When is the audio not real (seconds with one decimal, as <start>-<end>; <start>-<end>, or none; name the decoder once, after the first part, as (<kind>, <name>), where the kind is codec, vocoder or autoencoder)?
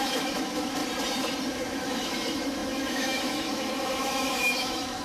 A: 0.0-0.8 (autoencoder, DAC-VAE); 1.5-5.0